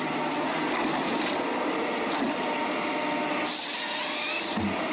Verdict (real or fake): real